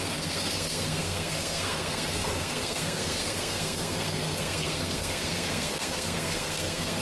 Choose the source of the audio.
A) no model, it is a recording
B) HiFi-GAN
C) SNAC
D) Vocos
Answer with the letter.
C